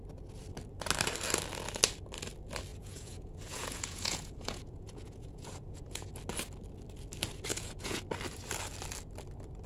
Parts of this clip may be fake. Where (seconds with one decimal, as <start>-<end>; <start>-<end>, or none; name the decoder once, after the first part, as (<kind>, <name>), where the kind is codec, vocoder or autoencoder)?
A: 2.7-6.1 (vocoder, Vocos); 7.5-8.0